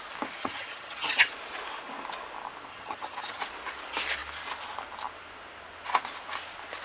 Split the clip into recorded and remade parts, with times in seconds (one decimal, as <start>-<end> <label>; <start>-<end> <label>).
0.0-0.4 recorded; 0.4-1.3 remade; 1.3-2.7 recorded; 2.7-3.4 remade; 3.4-6.8 recorded